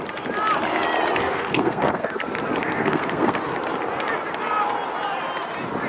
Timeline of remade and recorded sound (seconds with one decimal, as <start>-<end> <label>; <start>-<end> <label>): 0.0-1.2 recorded; 1.2-2.2 remade; 2.2-2.6 recorded; 2.6-3.4 remade; 3.4-5.9 recorded